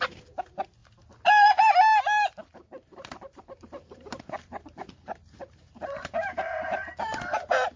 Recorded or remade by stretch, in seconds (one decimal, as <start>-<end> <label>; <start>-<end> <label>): 0.0-2.5 recorded; 2.5-6.5 remade; 6.5-7.8 recorded